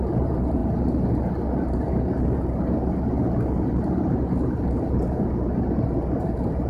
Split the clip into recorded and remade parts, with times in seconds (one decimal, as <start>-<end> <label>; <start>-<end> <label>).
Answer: 0.0-6.7 recorded